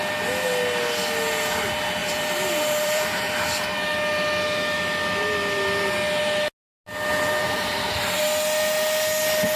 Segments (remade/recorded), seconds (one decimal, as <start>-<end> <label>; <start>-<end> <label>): 0.0-2.0 recorded; 2.0-3.3 remade; 3.3-7.4 recorded; 7.4-8.2 remade; 8.2-9.6 recorded